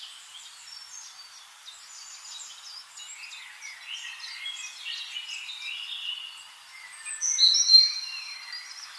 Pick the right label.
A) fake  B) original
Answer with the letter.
B